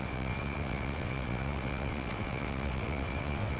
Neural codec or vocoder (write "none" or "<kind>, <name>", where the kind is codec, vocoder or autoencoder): vocoder, WaveNeXt